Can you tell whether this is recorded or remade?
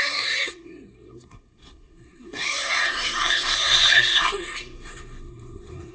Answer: remade